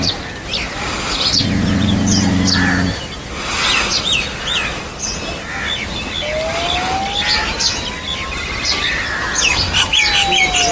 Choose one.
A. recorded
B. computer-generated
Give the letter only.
A